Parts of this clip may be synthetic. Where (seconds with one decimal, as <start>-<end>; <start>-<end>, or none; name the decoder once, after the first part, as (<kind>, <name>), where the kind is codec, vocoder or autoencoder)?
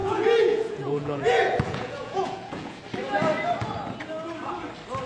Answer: 0.0-2.8 (vocoder, Vocos)